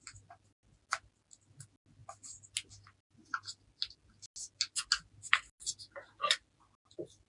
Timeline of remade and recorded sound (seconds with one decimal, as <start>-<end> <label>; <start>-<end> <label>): 0.0-7.3 recorded